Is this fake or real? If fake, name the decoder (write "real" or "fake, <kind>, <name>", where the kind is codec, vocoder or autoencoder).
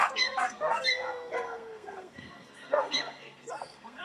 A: fake, codec, SNAC